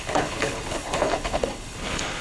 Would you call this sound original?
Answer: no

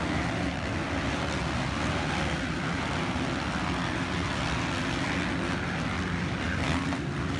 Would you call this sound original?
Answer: yes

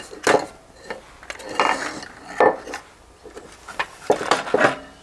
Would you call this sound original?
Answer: yes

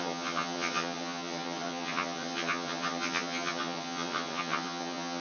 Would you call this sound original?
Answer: no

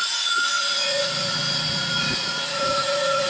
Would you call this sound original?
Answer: no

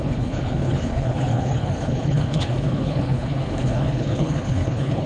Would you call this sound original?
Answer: no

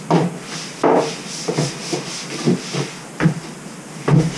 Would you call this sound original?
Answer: yes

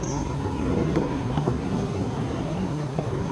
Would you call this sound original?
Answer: no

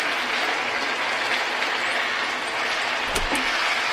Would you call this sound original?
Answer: yes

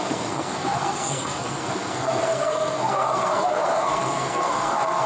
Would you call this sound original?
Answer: no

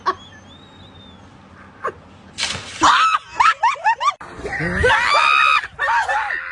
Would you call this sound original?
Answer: yes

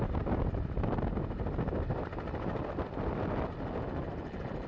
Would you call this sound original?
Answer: yes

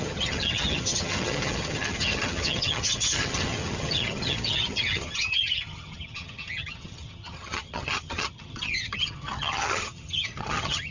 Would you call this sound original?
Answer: no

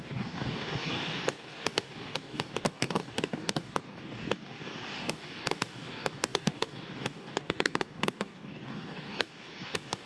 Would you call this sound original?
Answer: no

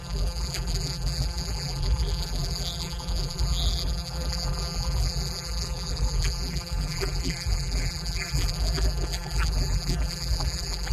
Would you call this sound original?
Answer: no